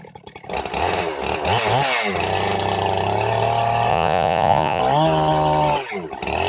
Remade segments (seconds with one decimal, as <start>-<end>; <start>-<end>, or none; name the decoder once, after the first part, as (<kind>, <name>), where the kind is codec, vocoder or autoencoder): 3.9-4.8 (vocoder, Vocos)

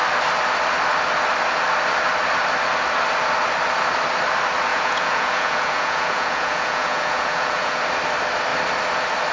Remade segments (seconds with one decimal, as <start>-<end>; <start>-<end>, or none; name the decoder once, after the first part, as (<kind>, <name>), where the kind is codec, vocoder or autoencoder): 4.7-7.8 (vocoder, Vocos)